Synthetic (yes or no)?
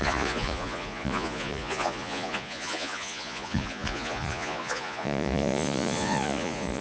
yes